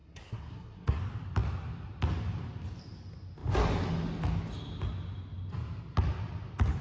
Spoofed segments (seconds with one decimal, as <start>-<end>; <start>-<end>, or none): 0.0-1.0